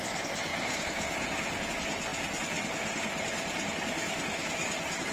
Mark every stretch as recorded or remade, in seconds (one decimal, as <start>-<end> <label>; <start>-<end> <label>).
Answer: 0.0-0.5 recorded; 0.5-1.7 remade; 1.7-5.1 recorded